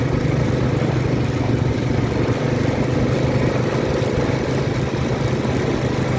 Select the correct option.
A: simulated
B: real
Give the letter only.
B